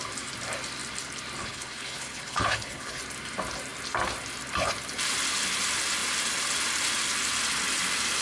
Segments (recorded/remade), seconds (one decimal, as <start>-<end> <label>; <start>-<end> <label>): 0.0-1.4 recorded; 1.4-3.0 remade; 3.0-8.2 recorded